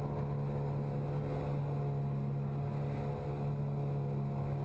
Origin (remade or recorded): recorded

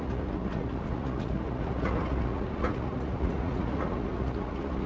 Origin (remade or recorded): remade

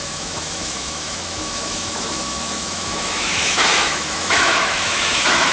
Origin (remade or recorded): remade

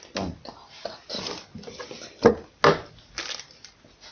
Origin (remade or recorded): recorded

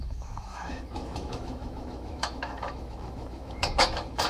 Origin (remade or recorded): remade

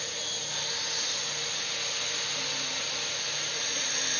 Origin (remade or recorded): recorded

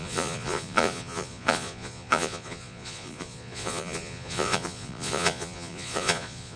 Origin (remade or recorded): remade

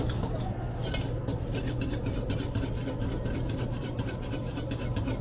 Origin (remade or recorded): recorded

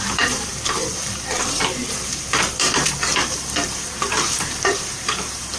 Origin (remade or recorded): remade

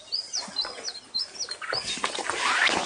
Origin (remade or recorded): recorded